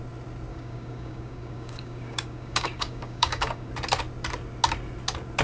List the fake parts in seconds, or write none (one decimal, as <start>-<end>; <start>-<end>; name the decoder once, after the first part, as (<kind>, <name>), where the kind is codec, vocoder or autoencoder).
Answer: 0.5-3.7 (codec, DAC)